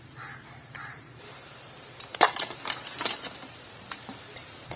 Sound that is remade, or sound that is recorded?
remade